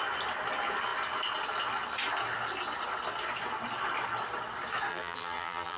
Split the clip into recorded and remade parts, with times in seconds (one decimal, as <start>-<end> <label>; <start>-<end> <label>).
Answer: 0.0-4.9 recorded; 4.9-5.8 remade